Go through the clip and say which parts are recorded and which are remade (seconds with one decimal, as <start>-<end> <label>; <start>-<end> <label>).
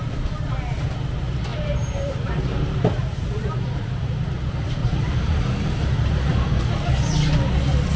0.0-1.5 recorded; 1.5-4.1 remade; 4.1-4.8 recorded; 4.8-6.1 remade; 6.1-8.0 recorded